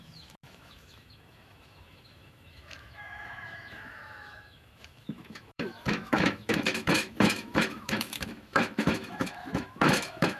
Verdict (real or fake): fake